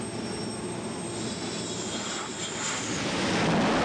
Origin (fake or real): real